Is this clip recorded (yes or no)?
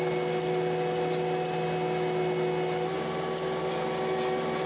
yes